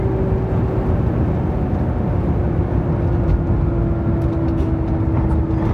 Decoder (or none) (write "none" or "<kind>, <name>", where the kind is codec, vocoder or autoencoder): none